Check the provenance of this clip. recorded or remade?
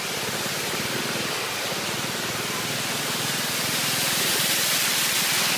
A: recorded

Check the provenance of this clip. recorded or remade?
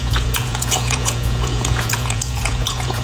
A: remade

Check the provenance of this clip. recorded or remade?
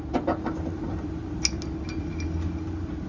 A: recorded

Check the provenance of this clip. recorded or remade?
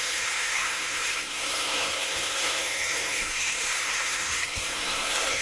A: remade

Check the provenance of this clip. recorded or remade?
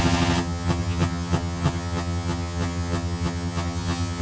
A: remade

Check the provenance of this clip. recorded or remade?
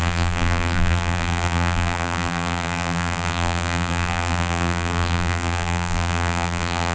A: remade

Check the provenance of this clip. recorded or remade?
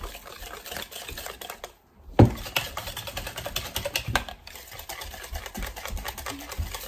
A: recorded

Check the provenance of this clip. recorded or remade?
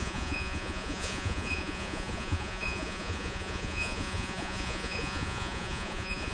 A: remade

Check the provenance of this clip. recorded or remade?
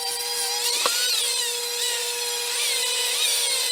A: recorded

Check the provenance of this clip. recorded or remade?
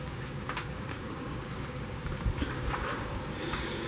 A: remade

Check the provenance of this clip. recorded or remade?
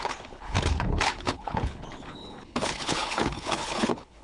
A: remade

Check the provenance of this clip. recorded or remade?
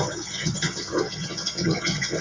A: remade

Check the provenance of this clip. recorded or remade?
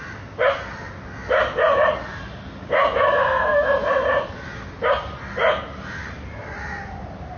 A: recorded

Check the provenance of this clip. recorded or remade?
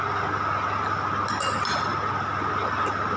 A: recorded